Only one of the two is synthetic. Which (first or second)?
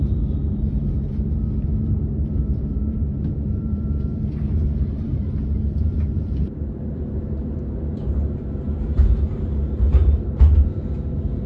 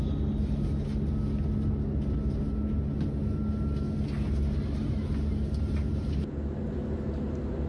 first